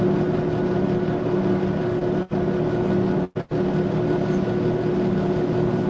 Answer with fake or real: real